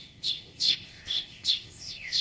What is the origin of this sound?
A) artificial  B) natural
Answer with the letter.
A